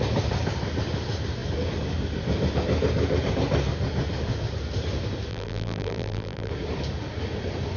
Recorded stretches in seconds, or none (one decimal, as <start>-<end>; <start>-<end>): 0.0-5.3; 6.5-7.8